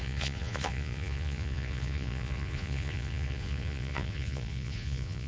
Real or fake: fake